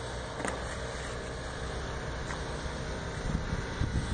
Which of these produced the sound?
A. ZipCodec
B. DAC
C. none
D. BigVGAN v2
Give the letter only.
C